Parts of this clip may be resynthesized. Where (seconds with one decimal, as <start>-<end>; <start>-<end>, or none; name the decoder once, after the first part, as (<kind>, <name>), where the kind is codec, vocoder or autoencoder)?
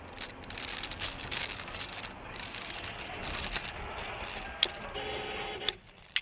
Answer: 0.7-2.0 (codec, DAC)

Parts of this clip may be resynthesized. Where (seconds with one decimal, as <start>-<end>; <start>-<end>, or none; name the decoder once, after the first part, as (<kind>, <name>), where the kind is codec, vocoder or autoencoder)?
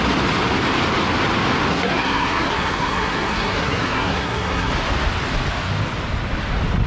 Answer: 1.7-4.7 (codec, SNAC)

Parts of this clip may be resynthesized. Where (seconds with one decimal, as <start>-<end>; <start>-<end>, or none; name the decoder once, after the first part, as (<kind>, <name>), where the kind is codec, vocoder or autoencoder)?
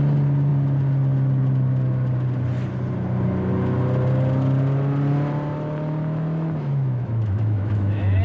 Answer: 6.7-8.2 (autoencoder, DAC-VAE)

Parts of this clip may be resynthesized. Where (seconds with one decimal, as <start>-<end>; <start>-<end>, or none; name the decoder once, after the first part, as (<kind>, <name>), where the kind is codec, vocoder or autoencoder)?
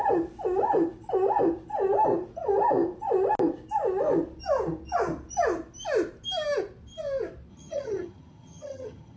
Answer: 7.5-9.2 (vocoder, HiFi-GAN)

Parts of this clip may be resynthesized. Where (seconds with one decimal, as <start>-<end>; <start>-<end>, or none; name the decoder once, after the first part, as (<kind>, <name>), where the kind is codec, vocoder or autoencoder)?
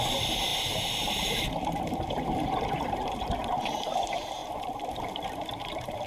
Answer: 0.0-6.1 (vocoder, BigVGAN v2)